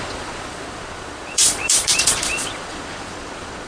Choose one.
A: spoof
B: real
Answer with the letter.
A